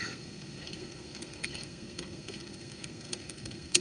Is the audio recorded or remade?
remade